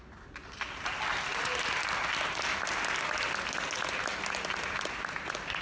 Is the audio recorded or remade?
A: recorded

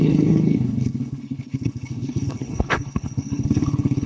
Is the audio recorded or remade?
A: remade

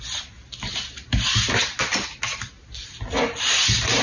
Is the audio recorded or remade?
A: recorded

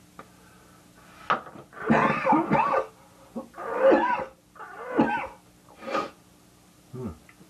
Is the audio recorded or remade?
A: recorded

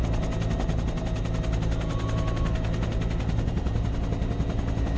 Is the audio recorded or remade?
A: recorded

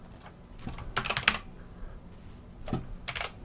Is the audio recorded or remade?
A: recorded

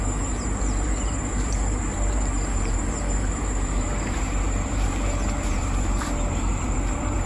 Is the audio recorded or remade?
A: remade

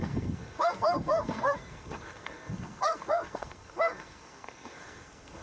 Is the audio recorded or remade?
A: remade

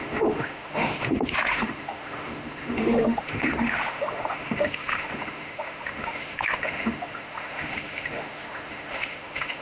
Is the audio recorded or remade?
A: remade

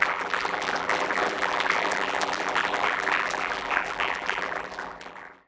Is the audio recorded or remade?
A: remade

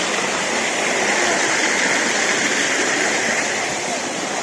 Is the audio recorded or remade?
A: remade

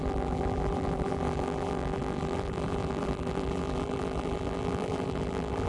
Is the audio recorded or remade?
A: remade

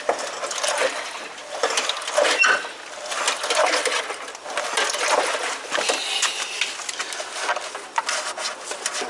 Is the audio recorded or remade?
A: recorded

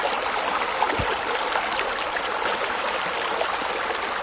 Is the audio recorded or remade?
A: recorded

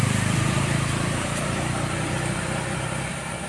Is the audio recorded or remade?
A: remade